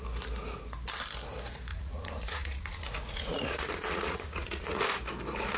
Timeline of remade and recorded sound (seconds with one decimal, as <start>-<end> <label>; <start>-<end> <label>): 0.0-1.7 recorded; 1.7-4.8 remade; 4.8-5.6 recorded